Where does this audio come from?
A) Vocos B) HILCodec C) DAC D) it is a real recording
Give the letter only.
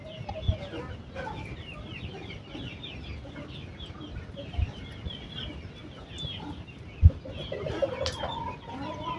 D